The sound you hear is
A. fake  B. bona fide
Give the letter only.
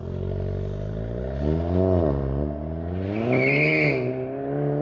B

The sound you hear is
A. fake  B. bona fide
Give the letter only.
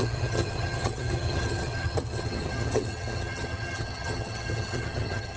A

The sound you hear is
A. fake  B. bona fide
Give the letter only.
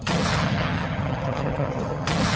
A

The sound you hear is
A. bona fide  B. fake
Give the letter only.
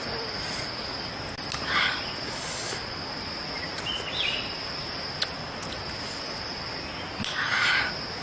A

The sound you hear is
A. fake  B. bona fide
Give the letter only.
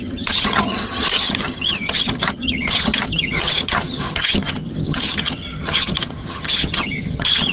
A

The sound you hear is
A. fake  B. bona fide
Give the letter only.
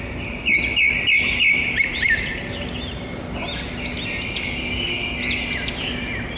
B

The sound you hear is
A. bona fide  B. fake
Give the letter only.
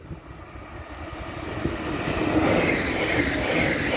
A